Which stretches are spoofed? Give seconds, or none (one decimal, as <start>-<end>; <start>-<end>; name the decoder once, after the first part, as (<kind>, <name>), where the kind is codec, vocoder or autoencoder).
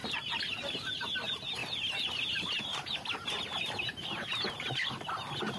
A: none